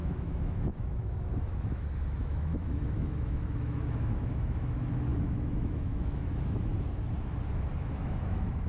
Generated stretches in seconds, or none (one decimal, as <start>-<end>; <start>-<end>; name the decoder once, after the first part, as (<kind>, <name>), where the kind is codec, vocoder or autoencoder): 0.0-6.7 (autoencoder, DAC-VAE); 7.8-8.7